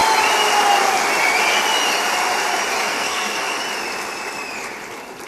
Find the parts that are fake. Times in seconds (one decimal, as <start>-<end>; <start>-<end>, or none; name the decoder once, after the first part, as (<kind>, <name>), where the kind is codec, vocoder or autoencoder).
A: 2.8-3.6 (codec, SNAC)